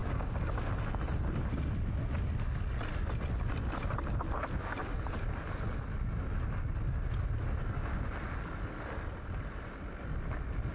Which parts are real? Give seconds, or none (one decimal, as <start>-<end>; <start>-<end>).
0.7-10.7